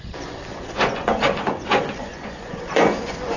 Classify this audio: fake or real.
fake